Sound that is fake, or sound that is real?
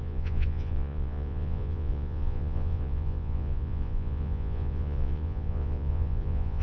fake